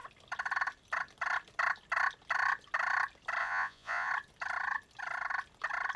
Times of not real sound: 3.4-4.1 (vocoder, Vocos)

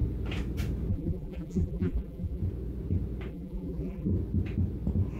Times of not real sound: 0.9-2.4 (vocoder, BigVGAN v2); 3.3-4.1